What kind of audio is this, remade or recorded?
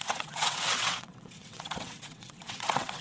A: remade